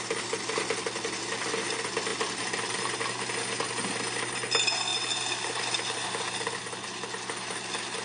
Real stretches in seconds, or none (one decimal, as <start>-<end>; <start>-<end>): 0.0-8.0